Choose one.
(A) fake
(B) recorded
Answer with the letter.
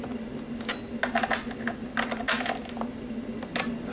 B